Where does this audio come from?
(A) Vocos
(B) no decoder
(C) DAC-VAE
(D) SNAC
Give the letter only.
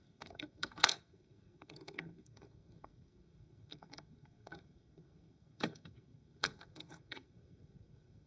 D